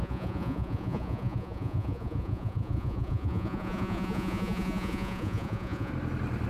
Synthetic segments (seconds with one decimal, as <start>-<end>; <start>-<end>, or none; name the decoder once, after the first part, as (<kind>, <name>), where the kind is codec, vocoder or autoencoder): 0.0-5.9 (vocoder, Vocos)

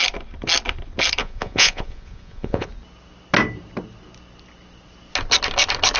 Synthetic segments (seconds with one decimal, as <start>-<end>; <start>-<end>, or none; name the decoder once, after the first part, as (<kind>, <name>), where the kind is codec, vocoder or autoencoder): 1.2-2.7 (vocoder, Vocos)

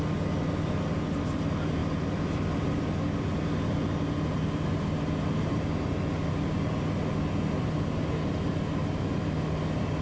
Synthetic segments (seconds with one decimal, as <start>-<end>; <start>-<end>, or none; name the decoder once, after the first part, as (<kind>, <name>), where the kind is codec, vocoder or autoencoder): none